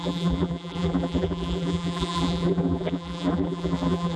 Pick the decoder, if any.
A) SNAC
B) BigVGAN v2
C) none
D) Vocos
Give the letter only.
B